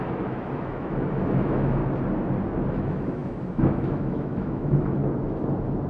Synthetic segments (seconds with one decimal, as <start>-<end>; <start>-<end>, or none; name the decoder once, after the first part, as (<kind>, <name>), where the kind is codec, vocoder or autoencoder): 0.0-1.8 (autoencoder, DAC-VAE); 2.7-5.0